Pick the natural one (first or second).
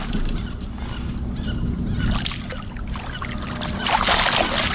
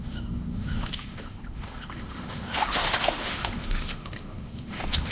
first